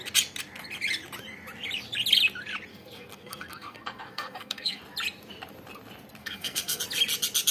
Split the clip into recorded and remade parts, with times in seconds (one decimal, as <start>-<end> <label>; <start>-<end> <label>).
0.0-2.7 recorded; 2.7-4.8 remade; 4.8-6.2 recorded; 6.2-6.8 remade; 6.8-7.5 recorded